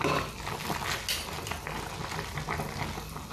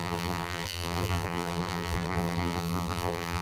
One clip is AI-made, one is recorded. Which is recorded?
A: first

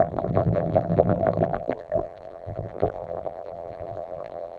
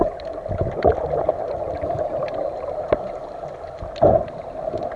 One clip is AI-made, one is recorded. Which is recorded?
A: second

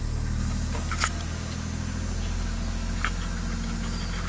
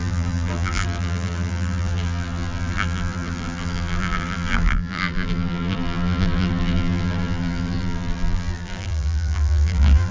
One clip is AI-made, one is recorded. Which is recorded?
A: first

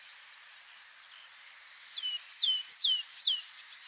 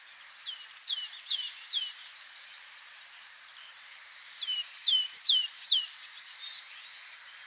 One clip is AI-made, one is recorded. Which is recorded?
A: first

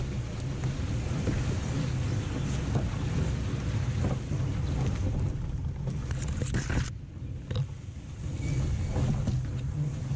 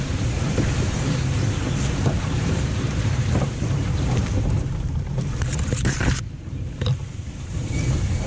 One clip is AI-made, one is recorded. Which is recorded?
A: first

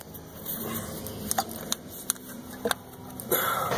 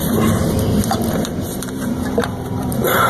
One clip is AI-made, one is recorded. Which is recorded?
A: first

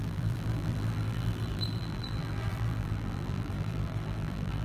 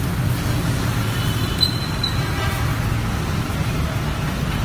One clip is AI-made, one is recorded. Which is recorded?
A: second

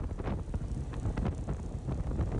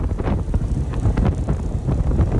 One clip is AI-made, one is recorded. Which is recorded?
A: first